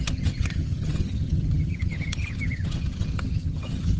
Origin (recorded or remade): remade